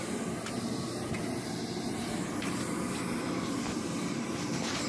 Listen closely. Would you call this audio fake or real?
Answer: fake